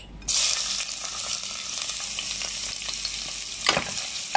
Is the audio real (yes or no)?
yes